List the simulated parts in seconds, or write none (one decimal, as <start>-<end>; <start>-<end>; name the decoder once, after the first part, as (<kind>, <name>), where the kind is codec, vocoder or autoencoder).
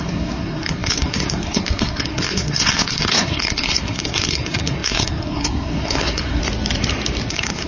0.0-6.4 (codec, SNAC); 7.3-7.7